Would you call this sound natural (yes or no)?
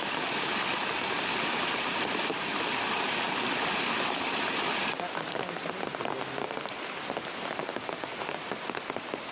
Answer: yes